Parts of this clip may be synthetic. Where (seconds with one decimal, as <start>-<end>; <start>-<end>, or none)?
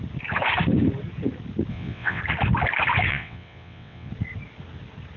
1.7-2.2; 3.1-4.1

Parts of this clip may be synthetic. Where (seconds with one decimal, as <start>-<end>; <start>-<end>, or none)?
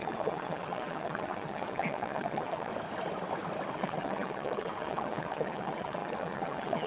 0.0-2.7; 3.7-6.9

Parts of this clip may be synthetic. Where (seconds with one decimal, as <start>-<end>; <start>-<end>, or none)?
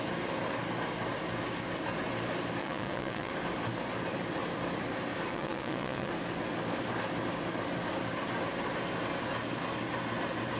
2.6-3.3; 5.3-6.1